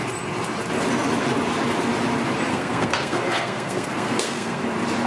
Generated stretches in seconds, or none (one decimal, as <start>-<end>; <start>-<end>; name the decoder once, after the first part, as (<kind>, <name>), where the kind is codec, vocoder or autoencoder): 2.5-4.6 (codec, SNAC)